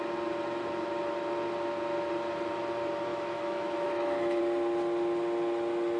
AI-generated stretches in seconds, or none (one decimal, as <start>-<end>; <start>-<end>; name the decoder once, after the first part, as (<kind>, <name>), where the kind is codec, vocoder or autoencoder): 3.1-4.4 (autoencoder, DAC-VAE)

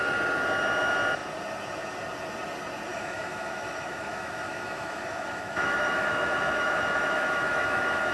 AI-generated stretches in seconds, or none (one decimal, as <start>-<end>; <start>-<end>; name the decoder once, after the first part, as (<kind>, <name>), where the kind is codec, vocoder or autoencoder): 2.9-8.1 (autoencoder, DAC-VAE)

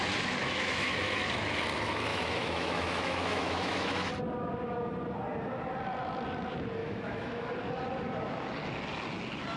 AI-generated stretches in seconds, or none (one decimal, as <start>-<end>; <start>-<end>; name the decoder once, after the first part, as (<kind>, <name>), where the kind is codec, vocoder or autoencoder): 0.4-1.2 (autoencoder, DAC-VAE); 2.1-4.1; 6.8-7.5